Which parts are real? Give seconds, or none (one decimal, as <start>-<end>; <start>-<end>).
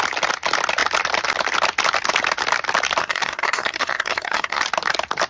0.0-3.0; 4.6-5.3